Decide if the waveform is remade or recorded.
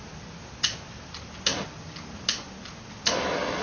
recorded